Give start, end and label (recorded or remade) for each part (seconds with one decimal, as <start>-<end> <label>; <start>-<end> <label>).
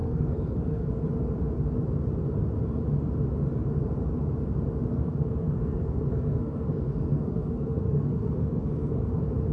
0.0-1.0 remade; 1.0-4.9 recorded; 4.9-9.1 remade; 9.1-9.5 recorded